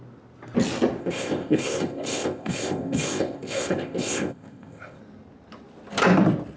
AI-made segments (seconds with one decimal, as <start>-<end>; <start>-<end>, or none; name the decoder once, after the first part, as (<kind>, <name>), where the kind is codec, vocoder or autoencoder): 1.0-5.0 (codec, ZipCodec)